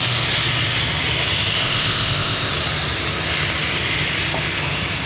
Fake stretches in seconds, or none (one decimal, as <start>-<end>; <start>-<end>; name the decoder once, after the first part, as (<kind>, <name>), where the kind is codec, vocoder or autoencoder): 1.6-2.5 (codec, ZipCodec)